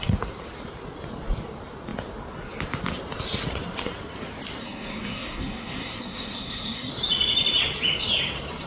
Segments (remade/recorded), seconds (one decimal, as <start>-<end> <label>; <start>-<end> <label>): 0.0-4.6 recorded; 4.6-6.9 remade; 6.9-8.7 recorded